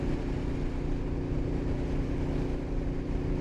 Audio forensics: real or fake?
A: real